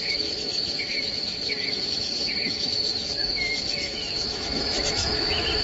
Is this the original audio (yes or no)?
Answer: no